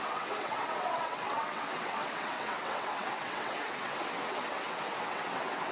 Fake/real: fake